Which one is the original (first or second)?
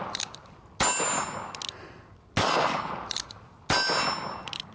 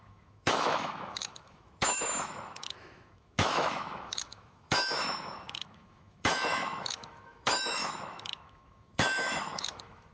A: first